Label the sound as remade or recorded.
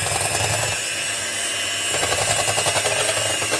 recorded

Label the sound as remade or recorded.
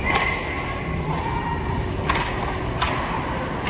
recorded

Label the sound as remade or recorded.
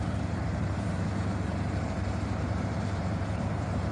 remade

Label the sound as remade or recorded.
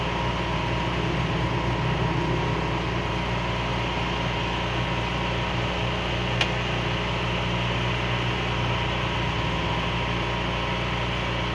recorded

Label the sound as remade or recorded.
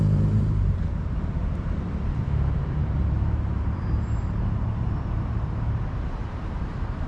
remade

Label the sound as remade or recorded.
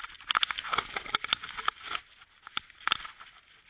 recorded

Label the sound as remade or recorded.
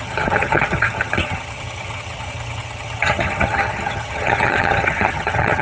remade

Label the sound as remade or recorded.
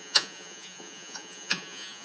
remade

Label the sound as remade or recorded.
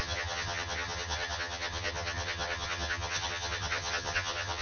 remade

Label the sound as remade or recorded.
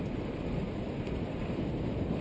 recorded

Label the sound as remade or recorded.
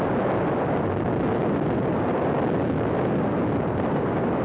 recorded